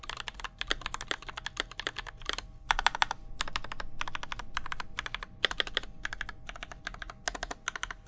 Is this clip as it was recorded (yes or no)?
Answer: yes